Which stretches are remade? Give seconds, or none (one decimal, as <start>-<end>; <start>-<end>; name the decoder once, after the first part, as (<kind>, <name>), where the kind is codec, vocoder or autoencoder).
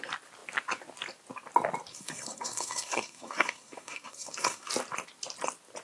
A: 1.9-4.7 (codec, SNAC)